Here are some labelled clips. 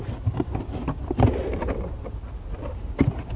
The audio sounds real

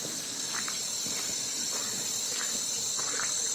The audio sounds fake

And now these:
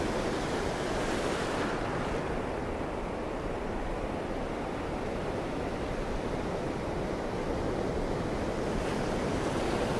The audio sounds fake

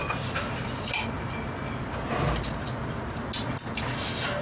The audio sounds real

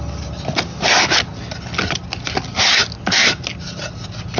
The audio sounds real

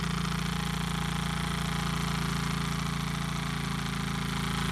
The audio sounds real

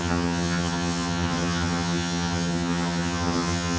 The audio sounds fake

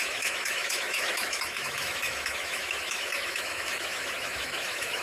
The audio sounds fake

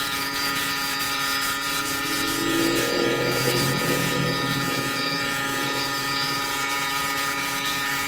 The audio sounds fake